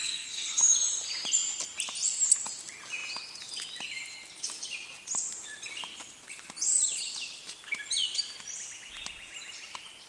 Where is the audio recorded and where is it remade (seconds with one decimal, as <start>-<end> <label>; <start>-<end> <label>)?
0.0-0.6 remade; 0.6-10.1 recorded